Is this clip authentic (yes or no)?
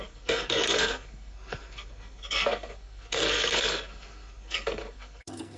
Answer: no